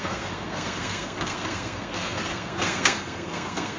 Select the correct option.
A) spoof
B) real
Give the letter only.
A